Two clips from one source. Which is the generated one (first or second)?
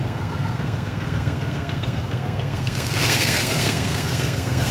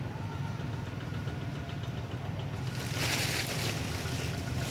first